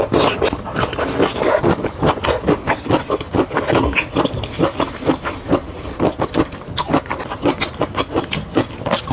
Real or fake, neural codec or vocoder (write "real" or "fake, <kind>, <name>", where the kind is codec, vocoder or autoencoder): real